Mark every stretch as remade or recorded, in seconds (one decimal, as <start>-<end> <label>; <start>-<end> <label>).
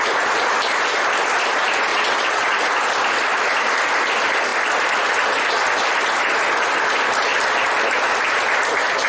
0.0-1.9 recorded; 1.9-2.6 remade; 2.6-9.1 recorded